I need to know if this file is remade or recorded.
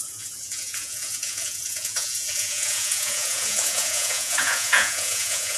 remade